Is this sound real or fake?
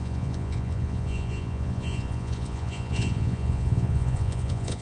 fake